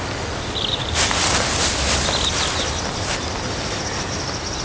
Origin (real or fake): real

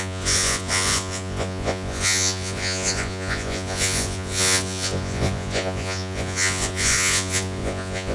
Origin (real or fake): fake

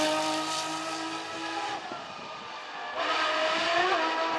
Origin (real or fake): real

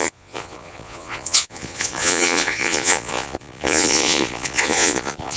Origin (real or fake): fake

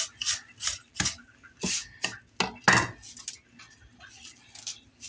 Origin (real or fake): real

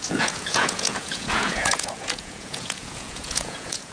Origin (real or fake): fake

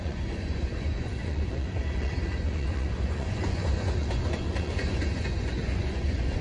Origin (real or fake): fake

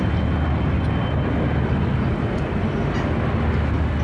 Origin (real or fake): real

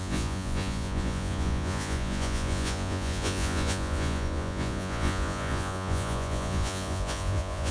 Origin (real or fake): fake